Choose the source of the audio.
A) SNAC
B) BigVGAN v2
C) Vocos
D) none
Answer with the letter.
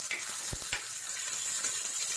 D